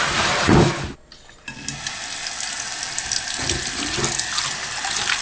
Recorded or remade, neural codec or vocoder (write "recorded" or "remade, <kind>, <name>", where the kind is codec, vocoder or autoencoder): recorded